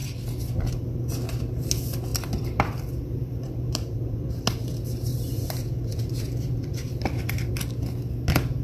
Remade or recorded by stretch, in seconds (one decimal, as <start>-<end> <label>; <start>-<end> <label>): 0.0-2.1 recorded; 2.1-4.3 remade; 4.3-5.1 recorded; 5.1-7.5 remade; 7.5-8.6 recorded